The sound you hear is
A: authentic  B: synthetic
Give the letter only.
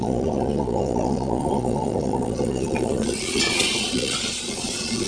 B